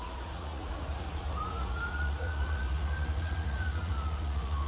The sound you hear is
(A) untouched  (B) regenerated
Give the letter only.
B